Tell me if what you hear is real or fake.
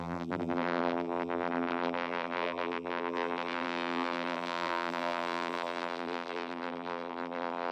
fake